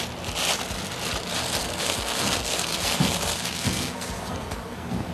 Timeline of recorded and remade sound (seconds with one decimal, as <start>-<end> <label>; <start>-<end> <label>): 0.0-1.6 recorded; 1.6-5.1 remade